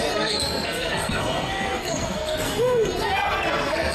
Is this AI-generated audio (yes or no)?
yes